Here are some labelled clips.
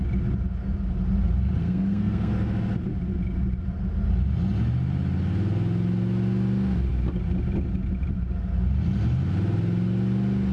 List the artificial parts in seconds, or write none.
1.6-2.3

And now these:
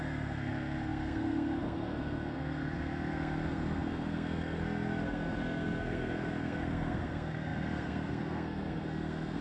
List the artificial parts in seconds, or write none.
0.0-9.4